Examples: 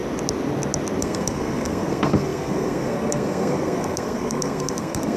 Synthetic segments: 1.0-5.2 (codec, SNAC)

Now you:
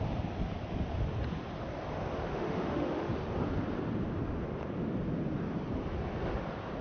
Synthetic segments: 2.3-3.1 (autoencoder, DAC-VAE)

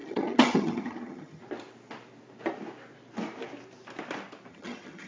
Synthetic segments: 0.0-1.4 (vocoder, HiFi-GAN); 4.5-5.1

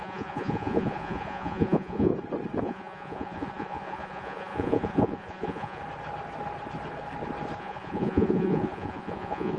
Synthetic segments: 0.0-2.1 (vocoder, Vocos); 2.6-5.8; 7.6-9.6

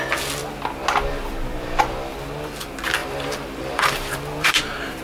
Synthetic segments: 3.0-4.6 (vocoder, BigVGAN v2)

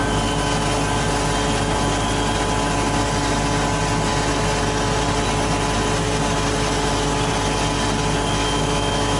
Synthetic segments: 8.4-9.2 (autoencoder, DAC-VAE)